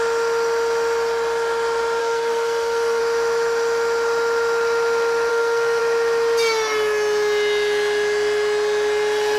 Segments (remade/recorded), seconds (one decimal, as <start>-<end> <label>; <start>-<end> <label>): 0.0-2.0 recorded; 2.0-3.0 remade; 3.0-5.3 recorded; 5.3-5.8 remade; 5.8-9.4 recorded